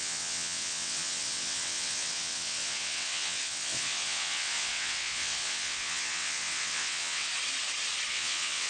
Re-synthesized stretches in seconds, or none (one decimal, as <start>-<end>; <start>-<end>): 0.0-7.3; 8.1-8.7